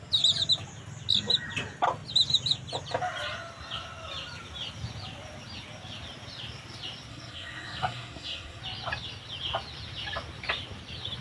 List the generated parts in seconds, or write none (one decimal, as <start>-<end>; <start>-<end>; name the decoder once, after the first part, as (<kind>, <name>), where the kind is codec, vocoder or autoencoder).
7.1-8.6 (codec, SNAC)